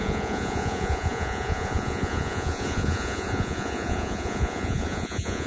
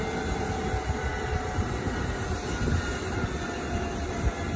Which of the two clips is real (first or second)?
second